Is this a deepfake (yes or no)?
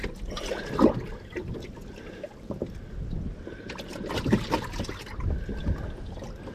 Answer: no